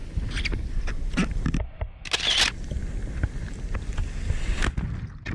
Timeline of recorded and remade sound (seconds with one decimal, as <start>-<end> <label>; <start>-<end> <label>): 0.0-5.3 recorded